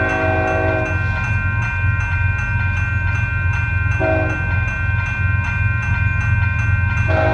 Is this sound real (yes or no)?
yes